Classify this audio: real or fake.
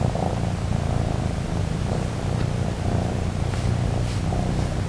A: real